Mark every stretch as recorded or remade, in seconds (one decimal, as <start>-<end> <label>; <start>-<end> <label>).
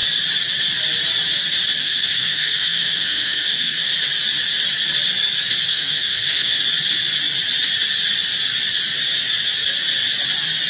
0.0-1.8 recorded; 1.8-3.9 remade; 3.9-5.7 recorded; 5.7-6.6 remade; 6.6-10.7 recorded